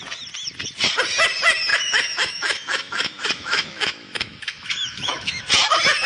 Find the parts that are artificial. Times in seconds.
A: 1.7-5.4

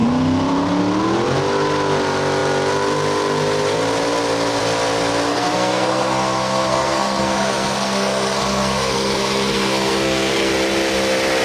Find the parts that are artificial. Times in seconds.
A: 5.3-10.5

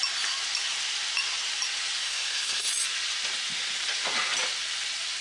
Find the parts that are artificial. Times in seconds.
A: 2.0-2.7

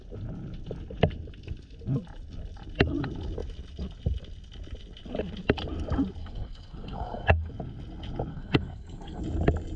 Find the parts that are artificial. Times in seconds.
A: 6.2-7.5; 8.3-9.2

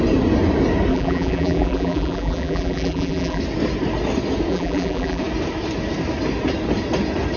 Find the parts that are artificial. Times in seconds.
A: 0.9-3.4; 4.5-5.2